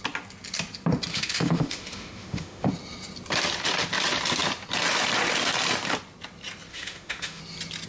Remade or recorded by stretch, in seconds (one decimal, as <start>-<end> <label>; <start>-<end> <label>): 0.0-1.1 recorded; 1.1-2.7 remade; 2.7-6.7 recorded; 6.7-7.4 remade; 7.4-7.9 recorded